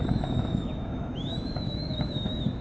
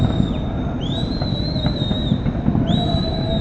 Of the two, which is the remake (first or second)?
first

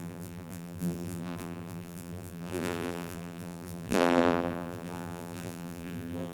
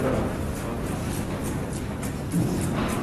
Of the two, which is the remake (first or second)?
first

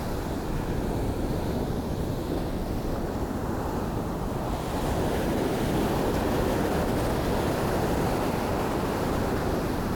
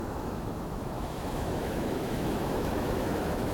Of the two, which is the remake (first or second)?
second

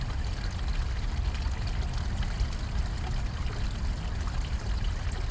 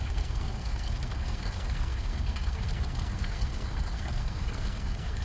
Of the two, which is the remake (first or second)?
second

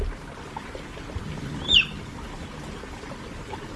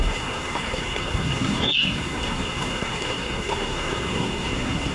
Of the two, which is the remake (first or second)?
second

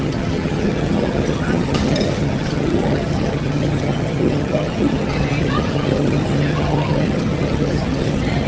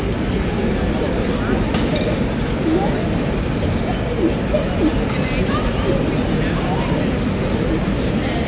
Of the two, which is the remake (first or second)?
first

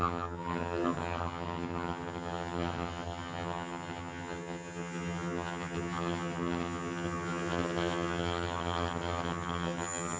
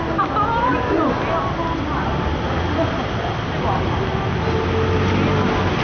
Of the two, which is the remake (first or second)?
first